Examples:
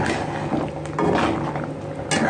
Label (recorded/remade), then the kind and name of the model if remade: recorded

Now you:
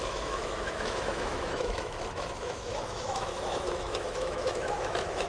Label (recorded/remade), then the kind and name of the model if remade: remade, autoencoder, DAC-VAE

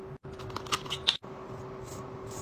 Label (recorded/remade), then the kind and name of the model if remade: recorded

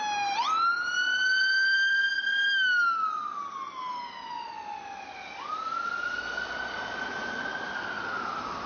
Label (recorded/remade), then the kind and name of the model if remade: recorded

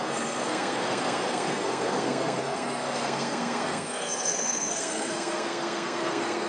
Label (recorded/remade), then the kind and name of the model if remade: remade, codec, SNAC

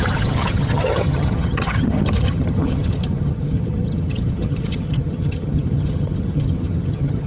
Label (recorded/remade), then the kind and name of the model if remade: remade, vocoder, HiFi-GAN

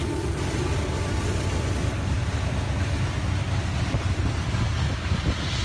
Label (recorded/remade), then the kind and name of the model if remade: recorded